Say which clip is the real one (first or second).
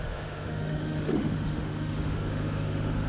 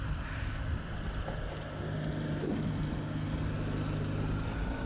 second